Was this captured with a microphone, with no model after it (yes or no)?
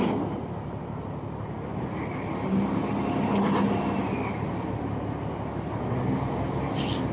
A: yes